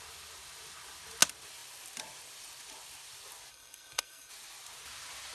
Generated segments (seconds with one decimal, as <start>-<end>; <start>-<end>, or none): 3.5-4.3